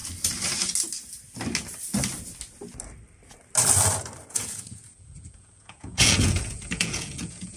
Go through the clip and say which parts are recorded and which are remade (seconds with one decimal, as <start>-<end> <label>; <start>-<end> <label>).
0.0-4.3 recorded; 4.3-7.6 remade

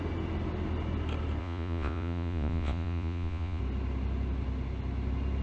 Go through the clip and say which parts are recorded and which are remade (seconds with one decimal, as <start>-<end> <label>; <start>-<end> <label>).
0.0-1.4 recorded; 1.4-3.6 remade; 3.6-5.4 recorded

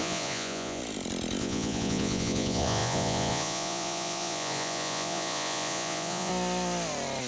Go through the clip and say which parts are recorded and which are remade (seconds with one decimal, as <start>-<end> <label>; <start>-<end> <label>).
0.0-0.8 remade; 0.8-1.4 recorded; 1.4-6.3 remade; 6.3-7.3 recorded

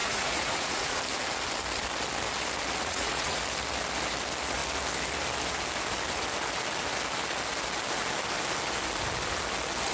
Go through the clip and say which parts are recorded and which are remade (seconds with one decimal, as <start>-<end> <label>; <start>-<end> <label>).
0.0-1.0 remade; 1.0-2.8 recorded; 2.8-3.4 remade; 3.4-9.9 recorded